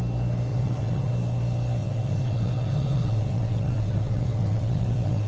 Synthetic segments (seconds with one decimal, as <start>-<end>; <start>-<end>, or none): 0.5-1.1; 1.8-5.3